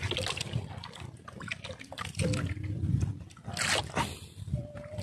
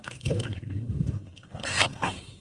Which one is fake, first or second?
second